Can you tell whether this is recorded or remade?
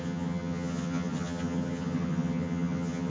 remade